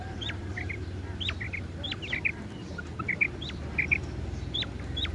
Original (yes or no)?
no